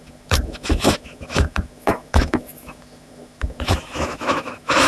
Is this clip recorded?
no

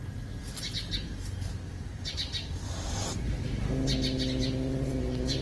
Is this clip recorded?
yes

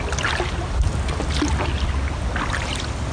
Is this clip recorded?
yes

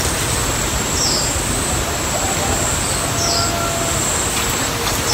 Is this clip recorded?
yes